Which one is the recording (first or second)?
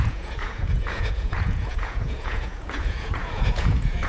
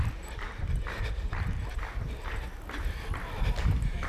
second